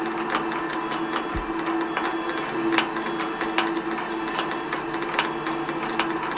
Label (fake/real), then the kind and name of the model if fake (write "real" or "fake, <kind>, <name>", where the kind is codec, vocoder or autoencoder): real